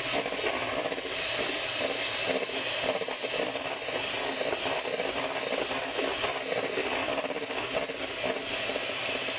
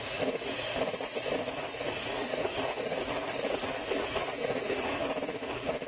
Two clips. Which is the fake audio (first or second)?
second